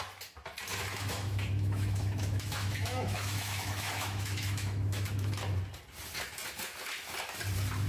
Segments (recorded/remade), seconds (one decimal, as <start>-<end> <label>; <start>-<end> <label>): 0.0-0.7 recorded; 0.7-5.3 remade; 5.3-7.9 recorded